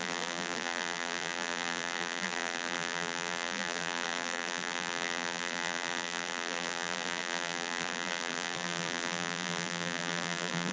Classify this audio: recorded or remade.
remade